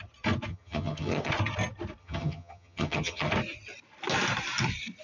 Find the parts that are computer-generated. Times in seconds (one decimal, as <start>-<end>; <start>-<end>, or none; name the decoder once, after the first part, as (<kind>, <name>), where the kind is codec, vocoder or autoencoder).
0.5-1.3 (vocoder, HiFi-GAN); 2.0-3.3